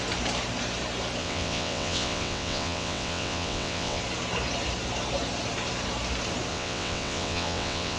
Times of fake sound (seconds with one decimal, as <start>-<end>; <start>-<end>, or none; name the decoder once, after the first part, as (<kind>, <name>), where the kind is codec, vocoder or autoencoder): 1.2-4.0 (vocoder, WaveNeXt); 6.5-8.0